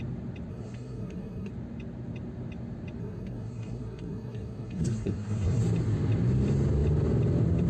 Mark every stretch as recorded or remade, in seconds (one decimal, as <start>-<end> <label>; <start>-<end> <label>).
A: 0.0-0.5 recorded; 0.5-1.5 remade; 1.5-3.0 recorded; 3.0-5.6 remade; 5.6-7.7 recorded